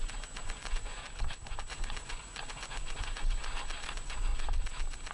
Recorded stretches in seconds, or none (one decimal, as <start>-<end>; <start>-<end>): 1.0-1.7; 3.4-3.9; 4.3-5.1